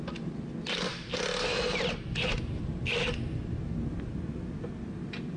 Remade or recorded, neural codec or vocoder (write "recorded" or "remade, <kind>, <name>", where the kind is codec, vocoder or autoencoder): recorded